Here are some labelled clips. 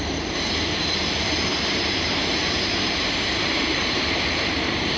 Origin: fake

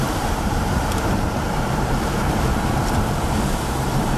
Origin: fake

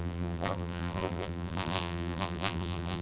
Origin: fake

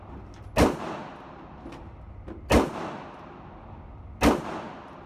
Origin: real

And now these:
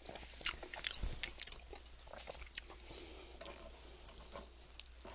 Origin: real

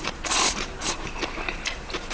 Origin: fake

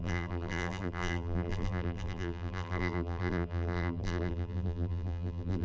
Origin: fake